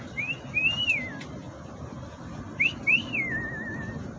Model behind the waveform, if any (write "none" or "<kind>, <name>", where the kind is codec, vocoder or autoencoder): none